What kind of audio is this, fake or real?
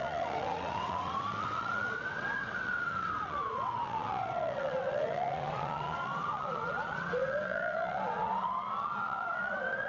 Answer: fake